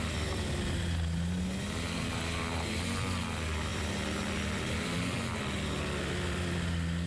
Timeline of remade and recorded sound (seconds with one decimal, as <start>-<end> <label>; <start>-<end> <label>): 0.0-7.1 recorded